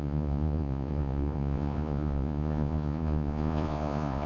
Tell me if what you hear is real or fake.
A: fake